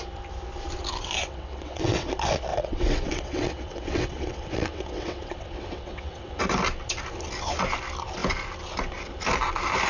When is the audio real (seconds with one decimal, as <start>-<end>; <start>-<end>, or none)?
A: 0.0-1.2; 2.1-2.5; 6.4-9.9

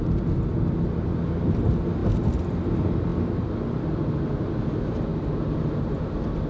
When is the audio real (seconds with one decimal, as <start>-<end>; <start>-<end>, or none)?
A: 0.0-5.1; 6.1-6.5

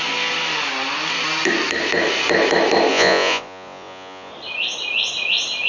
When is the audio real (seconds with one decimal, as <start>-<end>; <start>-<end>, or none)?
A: 0.0-2.9; 4.3-5.7

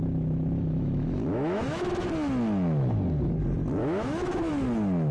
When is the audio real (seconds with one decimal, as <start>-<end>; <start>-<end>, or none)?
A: 2.1-3.8; 4.5-5.1